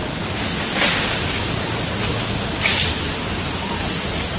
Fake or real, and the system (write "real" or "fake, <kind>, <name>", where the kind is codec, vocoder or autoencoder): real